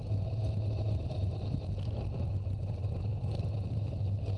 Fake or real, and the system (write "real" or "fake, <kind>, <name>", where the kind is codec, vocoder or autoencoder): fake, vocoder, BigVGAN v2